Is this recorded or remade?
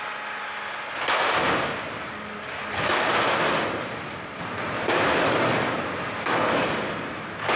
recorded